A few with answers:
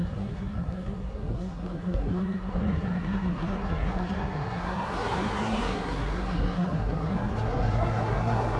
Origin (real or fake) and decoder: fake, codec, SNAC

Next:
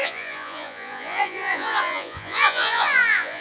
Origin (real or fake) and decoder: fake, vocoder, Vocos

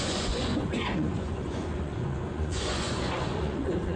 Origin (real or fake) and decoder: fake, vocoder, Vocos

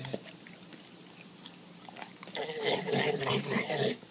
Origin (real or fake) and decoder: real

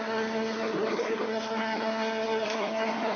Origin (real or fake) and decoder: fake, codec, SNAC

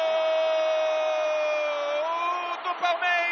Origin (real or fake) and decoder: real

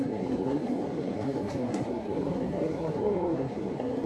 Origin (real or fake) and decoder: fake, codec, SNAC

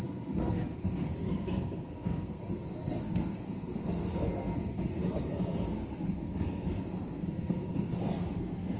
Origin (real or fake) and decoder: fake, codec, SNAC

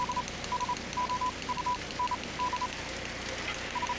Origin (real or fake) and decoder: real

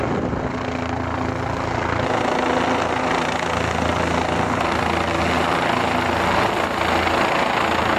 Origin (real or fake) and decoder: real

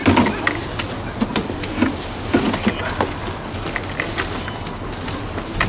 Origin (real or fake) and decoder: real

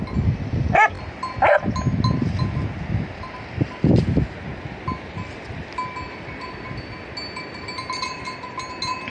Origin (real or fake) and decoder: real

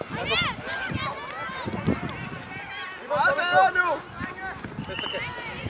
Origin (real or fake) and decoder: real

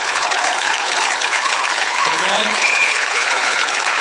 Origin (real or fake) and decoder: fake, codec, HILCodec